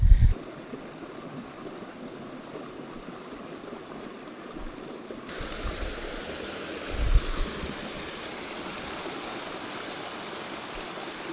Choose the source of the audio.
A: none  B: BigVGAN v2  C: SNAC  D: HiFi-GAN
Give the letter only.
A